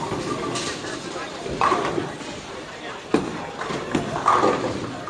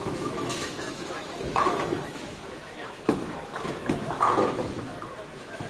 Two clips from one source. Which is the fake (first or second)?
second